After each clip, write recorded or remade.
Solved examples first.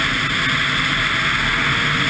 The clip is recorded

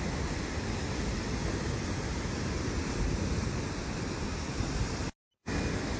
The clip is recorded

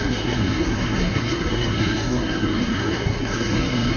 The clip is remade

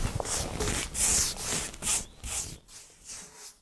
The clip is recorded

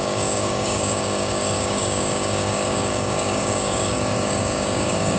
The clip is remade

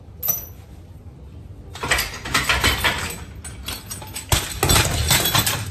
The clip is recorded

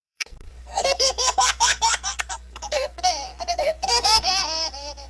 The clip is remade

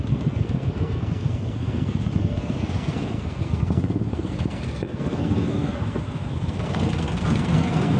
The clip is remade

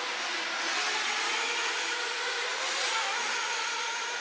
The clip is recorded